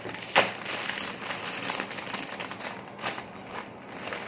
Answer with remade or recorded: recorded